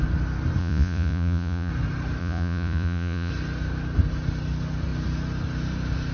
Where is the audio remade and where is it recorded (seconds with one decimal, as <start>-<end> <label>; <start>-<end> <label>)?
0.0-0.6 recorded; 0.6-1.7 remade; 1.7-2.2 recorded; 2.2-3.3 remade; 3.3-6.1 recorded